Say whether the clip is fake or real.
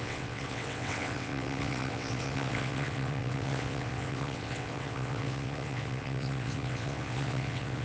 fake